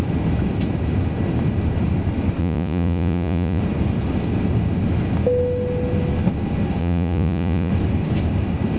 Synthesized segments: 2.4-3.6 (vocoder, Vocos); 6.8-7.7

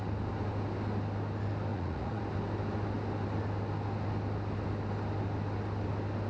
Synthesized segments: 1.7-2.2 (vocoder, Vocos)

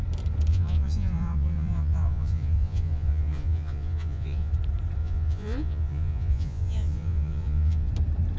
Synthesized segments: 0.5-4.5 (vocoder, Vocos); 5.0-7.9

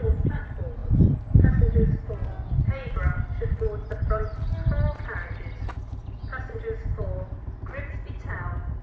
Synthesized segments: none

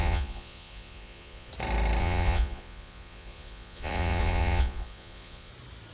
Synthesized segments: 0.0-1.5 (vocoder, Vocos); 2.0-5.5

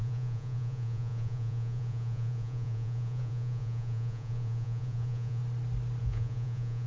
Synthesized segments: 0.0-5.4 (vocoder, Vocos); 6.0-6.9